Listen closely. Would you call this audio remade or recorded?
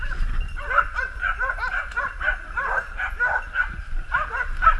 recorded